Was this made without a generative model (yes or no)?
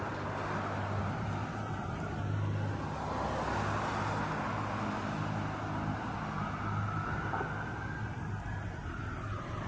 yes